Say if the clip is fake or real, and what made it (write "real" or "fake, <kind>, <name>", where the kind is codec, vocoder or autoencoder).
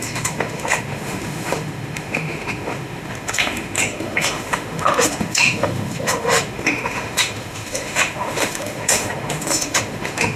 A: fake, autoencoder, DAC-VAE